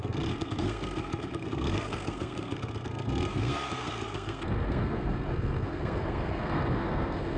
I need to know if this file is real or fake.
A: fake